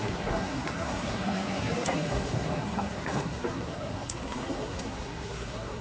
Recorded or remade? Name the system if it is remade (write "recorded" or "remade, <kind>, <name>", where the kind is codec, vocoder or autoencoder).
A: remade, codec, SNAC